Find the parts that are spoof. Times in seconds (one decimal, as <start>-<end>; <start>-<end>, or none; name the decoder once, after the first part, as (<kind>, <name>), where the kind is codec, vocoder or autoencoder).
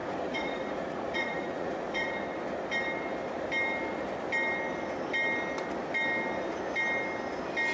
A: 0.0-2.1 (vocoder, Vocos)